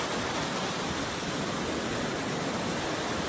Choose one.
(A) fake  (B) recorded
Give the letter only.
B